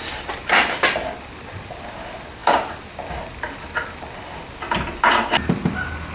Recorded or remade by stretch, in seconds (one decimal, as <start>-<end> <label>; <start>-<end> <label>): 0.0-6.1 recorded